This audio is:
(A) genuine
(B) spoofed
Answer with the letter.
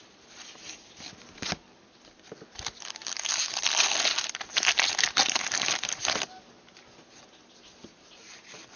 A